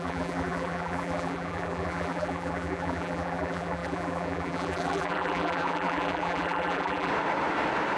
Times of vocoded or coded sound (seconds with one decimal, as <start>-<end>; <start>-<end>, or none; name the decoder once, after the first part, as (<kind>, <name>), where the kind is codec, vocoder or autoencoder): 0.0-7.1 (vocoder, BigVGAN v2)